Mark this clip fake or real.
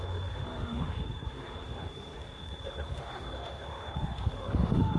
fake